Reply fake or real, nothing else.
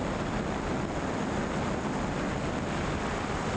real